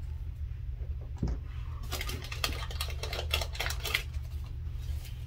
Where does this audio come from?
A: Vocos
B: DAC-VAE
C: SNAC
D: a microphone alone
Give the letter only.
D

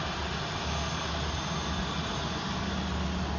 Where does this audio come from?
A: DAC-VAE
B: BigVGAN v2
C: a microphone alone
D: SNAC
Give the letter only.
C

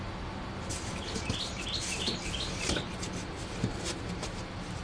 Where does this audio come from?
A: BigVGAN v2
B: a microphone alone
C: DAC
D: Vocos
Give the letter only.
B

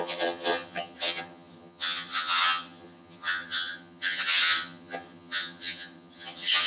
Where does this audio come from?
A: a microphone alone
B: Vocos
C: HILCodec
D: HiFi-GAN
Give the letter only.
D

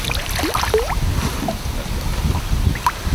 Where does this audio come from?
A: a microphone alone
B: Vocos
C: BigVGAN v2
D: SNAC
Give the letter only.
A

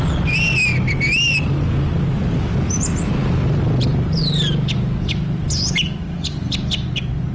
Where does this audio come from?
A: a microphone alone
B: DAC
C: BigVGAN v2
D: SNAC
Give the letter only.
A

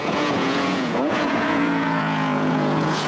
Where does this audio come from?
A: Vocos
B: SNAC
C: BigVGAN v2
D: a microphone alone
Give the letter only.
A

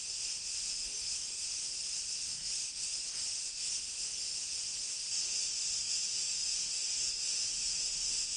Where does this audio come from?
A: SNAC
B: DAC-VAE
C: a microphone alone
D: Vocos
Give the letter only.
B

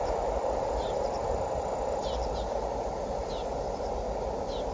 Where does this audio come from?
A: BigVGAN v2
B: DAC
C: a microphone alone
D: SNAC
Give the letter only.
C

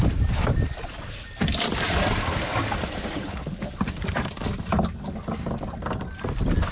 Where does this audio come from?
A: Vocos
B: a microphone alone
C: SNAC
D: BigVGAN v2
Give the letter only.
B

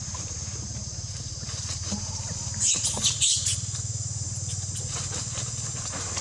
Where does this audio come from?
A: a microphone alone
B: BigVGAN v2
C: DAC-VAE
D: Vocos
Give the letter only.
B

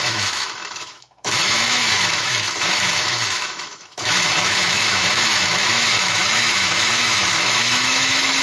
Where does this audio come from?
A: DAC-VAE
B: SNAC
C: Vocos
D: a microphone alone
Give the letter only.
A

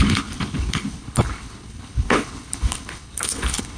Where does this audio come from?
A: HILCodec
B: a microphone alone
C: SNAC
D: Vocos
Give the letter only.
A